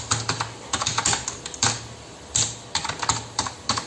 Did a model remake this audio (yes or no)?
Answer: no